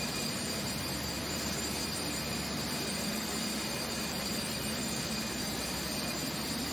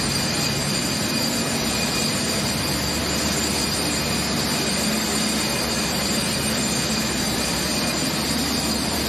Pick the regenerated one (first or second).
first